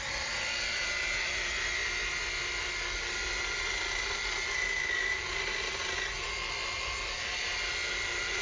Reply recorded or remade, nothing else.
recorded